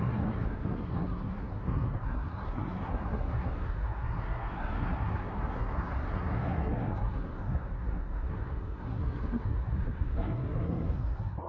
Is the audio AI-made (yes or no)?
yes